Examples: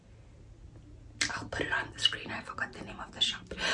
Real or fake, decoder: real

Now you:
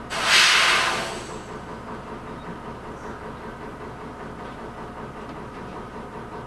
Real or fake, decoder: real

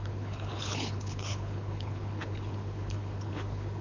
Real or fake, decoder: fake, codec, HILCodec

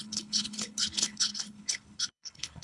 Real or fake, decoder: fake, codec, HILCodec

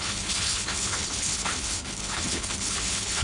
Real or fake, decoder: fake, codec, HILCodec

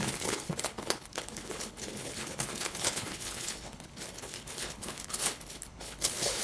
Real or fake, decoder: fake, codec, HILCodec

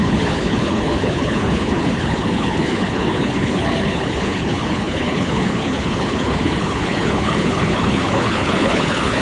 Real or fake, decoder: fake, codec, HILCodec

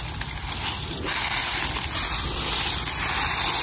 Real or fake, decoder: real